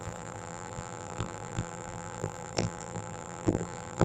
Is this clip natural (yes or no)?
no